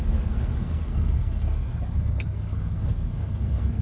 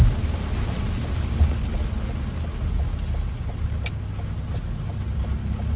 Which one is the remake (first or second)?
first